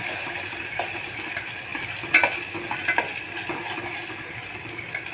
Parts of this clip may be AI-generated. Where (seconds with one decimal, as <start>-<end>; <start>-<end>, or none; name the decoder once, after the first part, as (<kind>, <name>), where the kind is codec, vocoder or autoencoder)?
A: none